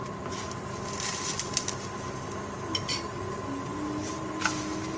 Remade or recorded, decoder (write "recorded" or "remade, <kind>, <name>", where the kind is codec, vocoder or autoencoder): recorded